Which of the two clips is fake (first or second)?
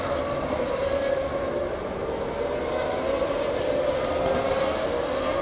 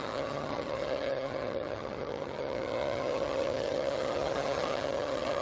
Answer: second